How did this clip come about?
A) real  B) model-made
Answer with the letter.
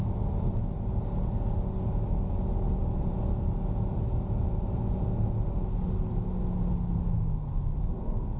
A